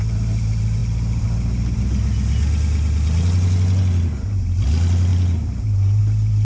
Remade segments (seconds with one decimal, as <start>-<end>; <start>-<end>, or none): 5.1-6.0